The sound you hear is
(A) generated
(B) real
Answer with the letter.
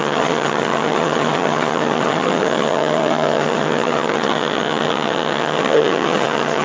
A